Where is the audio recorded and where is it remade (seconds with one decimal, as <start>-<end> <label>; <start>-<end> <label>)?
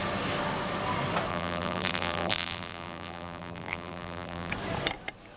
0.0-1.3 recorded; 1.3-4.5 remade; 4.5-5.4 recorded